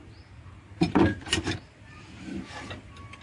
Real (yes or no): no